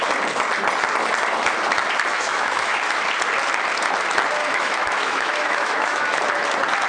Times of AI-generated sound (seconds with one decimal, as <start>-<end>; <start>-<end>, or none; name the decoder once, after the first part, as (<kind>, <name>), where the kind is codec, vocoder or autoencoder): 2.1-2.8 (autoencoder, DAC-VAE); 4.4-6.0